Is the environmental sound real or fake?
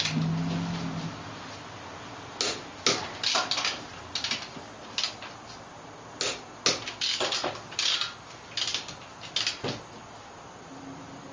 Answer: real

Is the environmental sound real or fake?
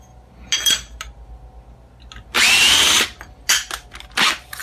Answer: real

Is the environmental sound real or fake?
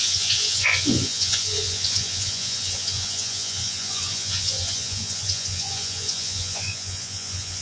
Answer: fake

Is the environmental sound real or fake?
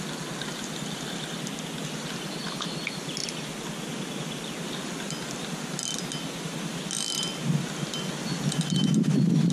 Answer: real